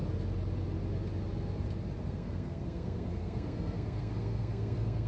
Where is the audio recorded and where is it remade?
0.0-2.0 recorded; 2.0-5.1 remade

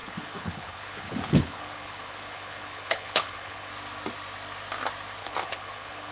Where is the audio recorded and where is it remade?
0.0-3.7 remade; 3.7-5.2 recorded; 5.2-6.1 remade

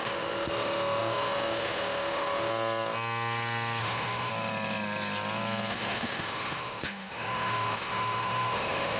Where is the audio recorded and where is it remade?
0.0-2.5 remade; 2.5-3.8 recorded; 3.8-4.3 remade; 4.3-5.7 recorded; 5.7-9.0 remade

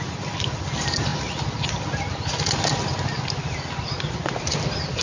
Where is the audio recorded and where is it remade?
0.0-5.0 recorded

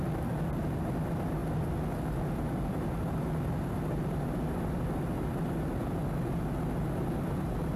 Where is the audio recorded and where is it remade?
0.0-7.8 recorded

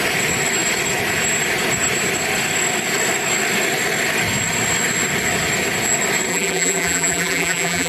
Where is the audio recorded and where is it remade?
0.0-6.3 recorded; 6.3-7.9 remade

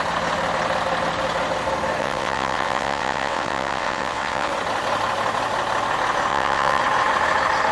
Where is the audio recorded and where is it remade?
0.0-2.0 recorded; 2.0-4.5 remade; 4.5-6.3 recorded; 6.3-6.8 remade; 6.8-7.7 recorded